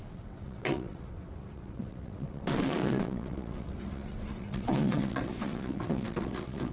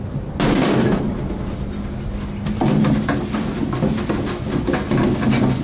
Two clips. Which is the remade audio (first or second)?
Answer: first